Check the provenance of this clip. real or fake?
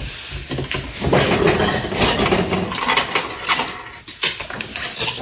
real